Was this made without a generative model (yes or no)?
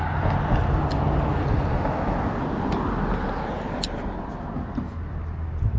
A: yes